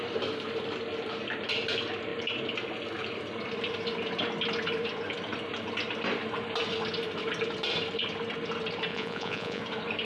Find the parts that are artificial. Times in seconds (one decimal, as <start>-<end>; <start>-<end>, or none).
8.9-9.6